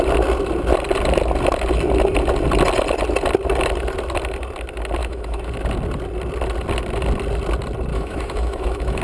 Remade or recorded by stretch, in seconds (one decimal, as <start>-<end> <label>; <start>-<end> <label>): 0.0-5.0 recorded; 5.0-5.5 remade; 5.5-7.9 recorded; 7.9-9.0 remade